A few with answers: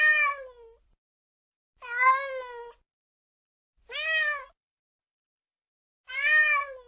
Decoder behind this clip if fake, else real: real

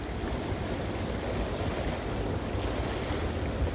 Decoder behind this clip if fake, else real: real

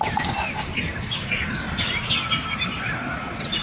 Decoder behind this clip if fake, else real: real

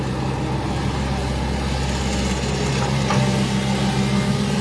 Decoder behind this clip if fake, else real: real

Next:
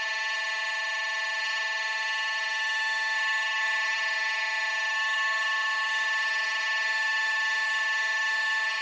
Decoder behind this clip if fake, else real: fake, autoencoder, DAC-VAE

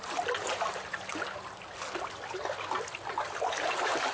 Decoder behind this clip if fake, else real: real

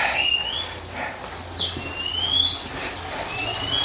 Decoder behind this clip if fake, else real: real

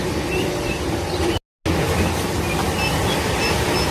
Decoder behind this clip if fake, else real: real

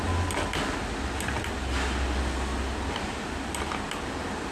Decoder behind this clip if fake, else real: real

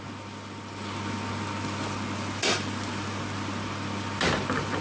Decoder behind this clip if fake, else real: real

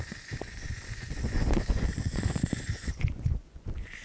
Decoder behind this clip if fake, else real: fake, vocoder, Vocos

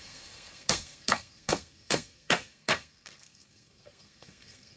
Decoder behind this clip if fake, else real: fake, codec, SNAC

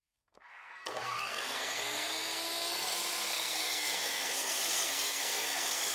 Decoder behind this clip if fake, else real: fake, codec, SNAC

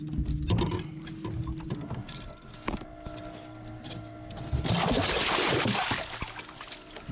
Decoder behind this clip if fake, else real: real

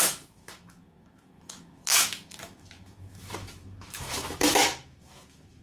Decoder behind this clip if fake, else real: fake, autoencoder, DAC-VAE